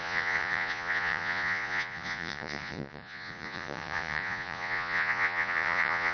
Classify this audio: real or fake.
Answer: fake